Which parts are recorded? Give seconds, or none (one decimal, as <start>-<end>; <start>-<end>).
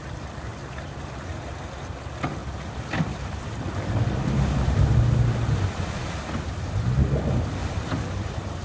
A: 0.0-2.4; 4.9-7.6